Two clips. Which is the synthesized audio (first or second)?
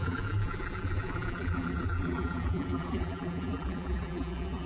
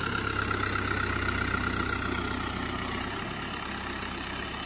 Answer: first